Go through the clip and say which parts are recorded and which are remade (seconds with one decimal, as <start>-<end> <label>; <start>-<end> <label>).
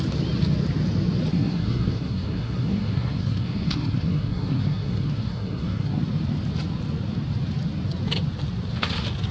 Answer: 0.0-1.3 recorded; 1.3-6.0 remade; 6.0-9.3 recorded